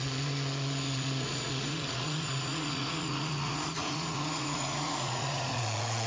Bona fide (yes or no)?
no